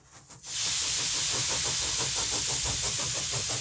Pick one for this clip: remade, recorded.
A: recorded